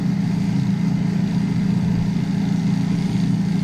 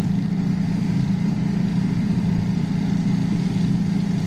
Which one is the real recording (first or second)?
first